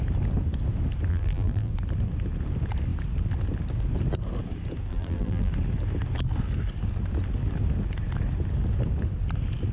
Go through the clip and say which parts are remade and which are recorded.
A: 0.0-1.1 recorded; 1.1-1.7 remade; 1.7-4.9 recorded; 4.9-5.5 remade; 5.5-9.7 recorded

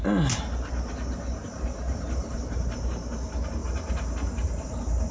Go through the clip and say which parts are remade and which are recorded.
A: 0.0-1.4 recorded; 1.4-2.8 remade; 2.8-3.6 recorded; 3.6-5.1 remade

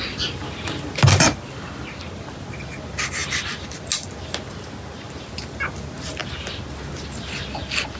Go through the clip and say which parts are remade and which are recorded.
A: 0.0-8.0 recorded